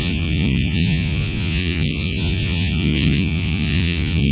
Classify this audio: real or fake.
fake